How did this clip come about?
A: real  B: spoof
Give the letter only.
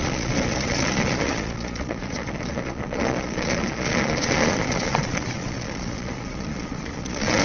B